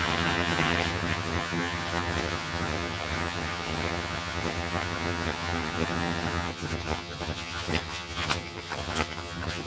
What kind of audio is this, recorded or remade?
remade